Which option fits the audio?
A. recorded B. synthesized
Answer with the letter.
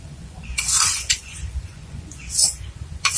B